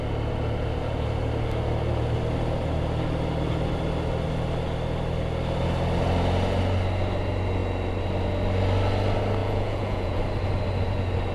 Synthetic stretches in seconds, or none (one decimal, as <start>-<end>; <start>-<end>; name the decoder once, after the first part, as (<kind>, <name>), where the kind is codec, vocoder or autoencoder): 9.4-10.2 (vocoder, Vocos)